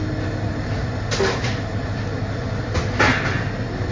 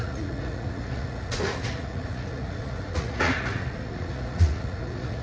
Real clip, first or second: first